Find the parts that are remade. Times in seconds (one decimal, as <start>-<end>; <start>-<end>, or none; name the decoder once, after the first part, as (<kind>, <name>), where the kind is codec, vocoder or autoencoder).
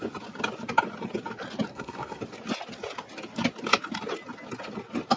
1.7-2.2 (codec, SNAC)